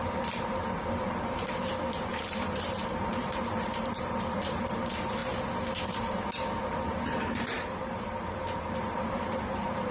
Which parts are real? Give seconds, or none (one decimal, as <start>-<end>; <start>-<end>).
5.2-6.9